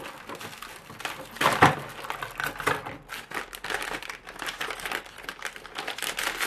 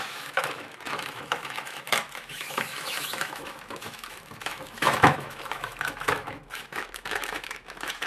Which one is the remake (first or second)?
second